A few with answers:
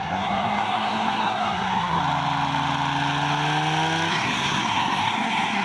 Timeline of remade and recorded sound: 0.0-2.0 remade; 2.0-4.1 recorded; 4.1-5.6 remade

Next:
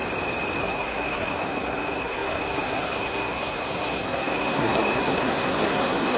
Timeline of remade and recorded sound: 0.0-0.6 recorded; 0.6-6.2 remade

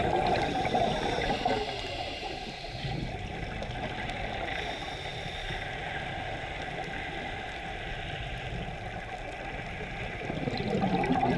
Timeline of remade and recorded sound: 0.0-11.4 recorded